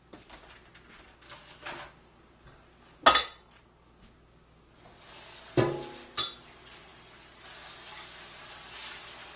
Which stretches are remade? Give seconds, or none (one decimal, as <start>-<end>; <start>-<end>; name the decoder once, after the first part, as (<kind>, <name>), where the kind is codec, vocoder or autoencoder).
none